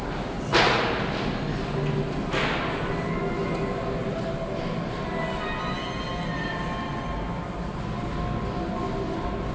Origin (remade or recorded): recorded